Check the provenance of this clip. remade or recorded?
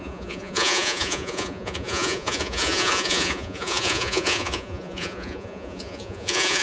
remade